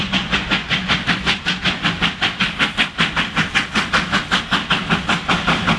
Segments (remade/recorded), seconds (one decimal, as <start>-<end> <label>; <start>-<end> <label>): 0.0-1.8 remade; 1.8-5.8 recorded